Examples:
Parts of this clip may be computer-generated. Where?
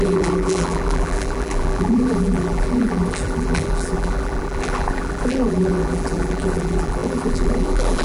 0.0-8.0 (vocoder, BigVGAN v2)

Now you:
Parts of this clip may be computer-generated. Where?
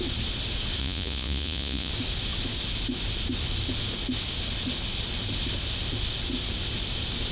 0.8-1.9 (vocoder, Vocos)